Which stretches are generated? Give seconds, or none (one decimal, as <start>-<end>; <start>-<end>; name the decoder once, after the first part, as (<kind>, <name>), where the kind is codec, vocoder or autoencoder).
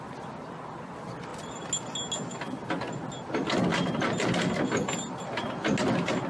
none